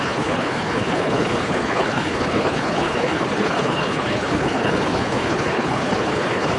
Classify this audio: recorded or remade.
remade